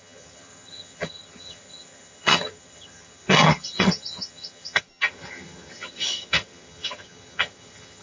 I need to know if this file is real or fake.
fake